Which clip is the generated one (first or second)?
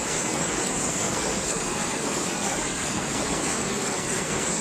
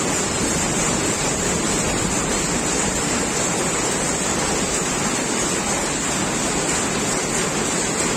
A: first